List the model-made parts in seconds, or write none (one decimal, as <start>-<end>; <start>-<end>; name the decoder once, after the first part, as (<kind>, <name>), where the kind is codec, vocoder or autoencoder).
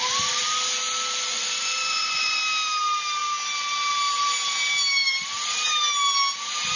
1.3-2.4 (vocoder, Vocos)